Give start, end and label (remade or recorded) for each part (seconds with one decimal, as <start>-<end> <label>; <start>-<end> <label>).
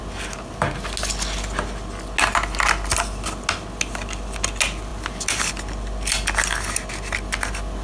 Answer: 0.0-7.8 recorded